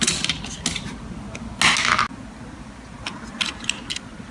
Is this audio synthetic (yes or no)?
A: no